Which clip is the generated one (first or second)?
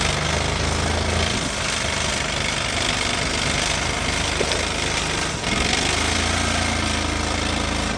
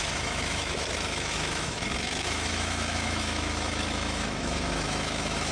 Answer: second